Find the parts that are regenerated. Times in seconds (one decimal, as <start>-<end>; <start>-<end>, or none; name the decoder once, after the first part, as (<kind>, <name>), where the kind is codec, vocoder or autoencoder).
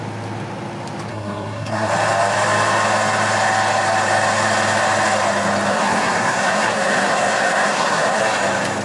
1.1-1.9 (codec, SNAC); 5.7-8.2